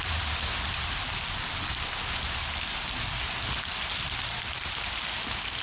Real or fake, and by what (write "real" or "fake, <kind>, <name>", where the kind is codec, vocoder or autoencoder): real